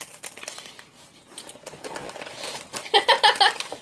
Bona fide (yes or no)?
yes